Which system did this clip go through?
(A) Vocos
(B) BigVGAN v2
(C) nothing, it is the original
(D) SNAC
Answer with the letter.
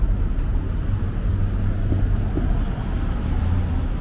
C